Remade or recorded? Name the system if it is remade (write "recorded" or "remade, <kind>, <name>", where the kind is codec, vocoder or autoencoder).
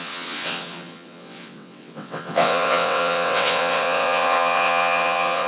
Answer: remade, vocoder, WaveNeXt